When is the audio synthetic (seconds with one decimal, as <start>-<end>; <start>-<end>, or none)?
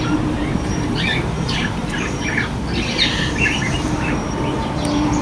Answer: 0.0-5.2